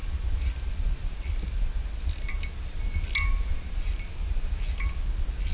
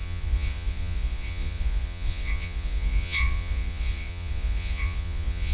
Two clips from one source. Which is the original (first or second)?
first